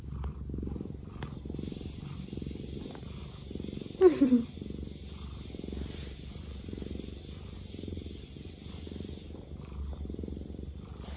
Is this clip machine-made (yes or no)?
no